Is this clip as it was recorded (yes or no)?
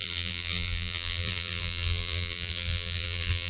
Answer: no